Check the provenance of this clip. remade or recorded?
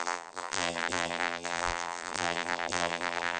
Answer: remade